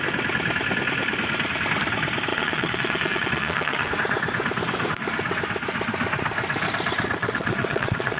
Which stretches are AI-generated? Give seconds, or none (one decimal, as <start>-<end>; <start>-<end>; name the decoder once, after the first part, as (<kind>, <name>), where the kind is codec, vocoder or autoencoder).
2.3-3.9 (vocoder, WaveNeXt); 7.2-8.2